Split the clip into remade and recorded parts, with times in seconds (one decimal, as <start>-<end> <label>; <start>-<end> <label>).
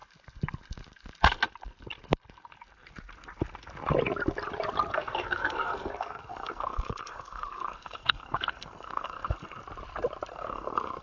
0.0-4.9 recorded; 4.9-9.6 remade; 9.6-10.3 recorded; 10.3-11.0 remade